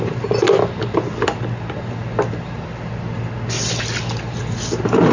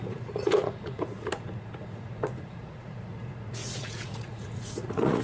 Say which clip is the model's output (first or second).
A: second